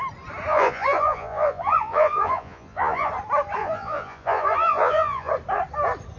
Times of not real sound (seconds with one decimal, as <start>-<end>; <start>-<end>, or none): 0.5-3.1; 3.6-5.3